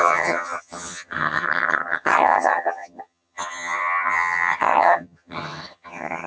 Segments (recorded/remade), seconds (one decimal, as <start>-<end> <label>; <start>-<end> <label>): 0.0-6.3 remade